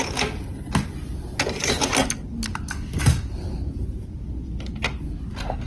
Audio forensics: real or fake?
real